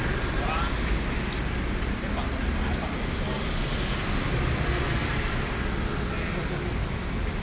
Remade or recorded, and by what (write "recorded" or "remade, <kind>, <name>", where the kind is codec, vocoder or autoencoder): recorded